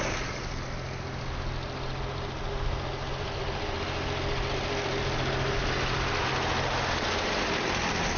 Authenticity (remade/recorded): recorded